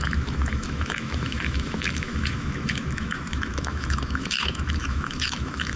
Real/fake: fake